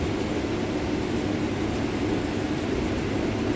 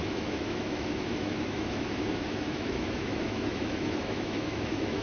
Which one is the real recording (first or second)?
first